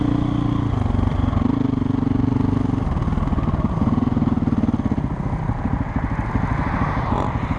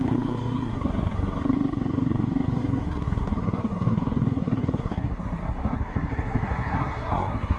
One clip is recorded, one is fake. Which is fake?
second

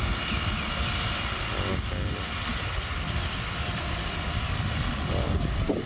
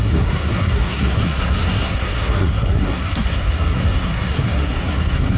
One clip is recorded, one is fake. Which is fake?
second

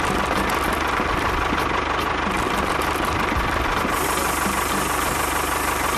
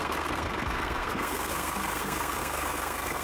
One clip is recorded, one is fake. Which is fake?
second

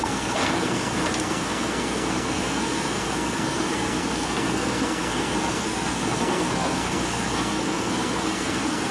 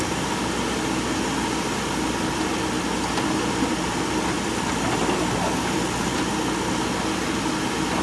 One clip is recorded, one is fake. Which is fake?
first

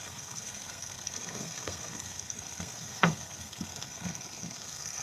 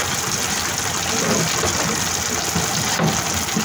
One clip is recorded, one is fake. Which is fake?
first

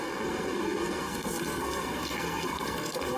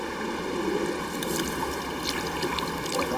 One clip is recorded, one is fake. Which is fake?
first